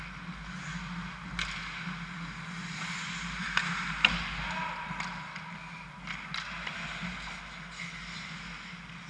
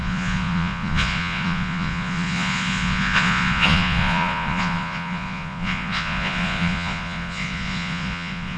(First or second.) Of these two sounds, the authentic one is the first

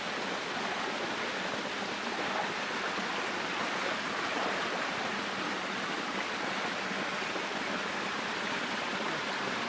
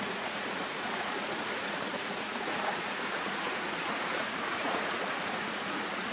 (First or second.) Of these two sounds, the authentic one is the first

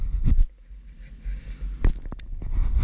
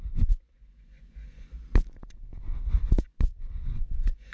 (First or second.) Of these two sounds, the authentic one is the first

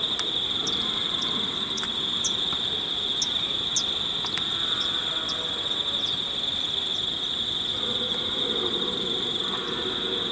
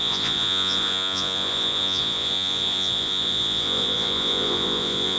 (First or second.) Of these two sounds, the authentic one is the first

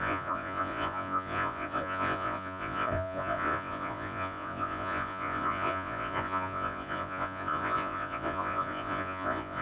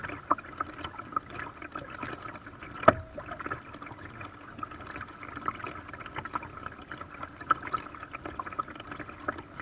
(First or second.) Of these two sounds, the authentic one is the second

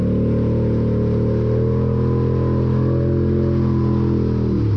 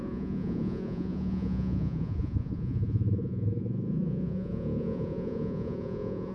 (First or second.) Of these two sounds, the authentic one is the first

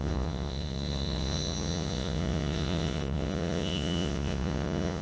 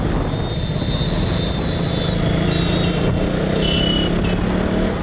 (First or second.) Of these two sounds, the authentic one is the second